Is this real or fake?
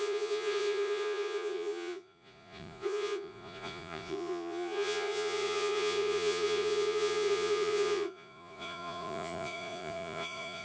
fake